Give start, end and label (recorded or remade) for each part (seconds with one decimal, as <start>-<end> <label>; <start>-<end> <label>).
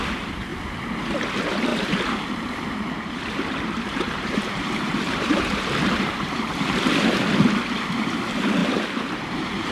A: 0.0-1.7 recorded; 1.7-6.4 remade; 6.4-8.6 recorded; 8.6-9.7 remade